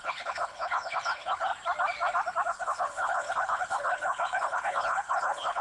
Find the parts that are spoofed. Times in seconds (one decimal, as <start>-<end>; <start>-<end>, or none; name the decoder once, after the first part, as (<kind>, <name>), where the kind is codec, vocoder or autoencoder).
0.0-1.5 (codec, HILCodec); 2.5-5.6